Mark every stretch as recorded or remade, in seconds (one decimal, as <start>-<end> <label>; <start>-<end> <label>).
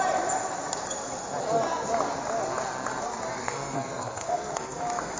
0.0-3.4 recorded; 3.4-4.8 remade; 4.8-5.2 recorded